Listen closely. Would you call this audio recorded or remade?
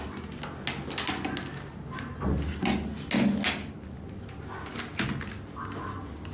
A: recorded